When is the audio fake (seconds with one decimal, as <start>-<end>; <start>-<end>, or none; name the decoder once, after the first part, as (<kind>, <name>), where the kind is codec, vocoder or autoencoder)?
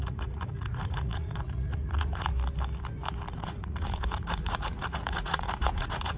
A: 0.0-2.3 (vocoder, Vocos); 3.3-6.2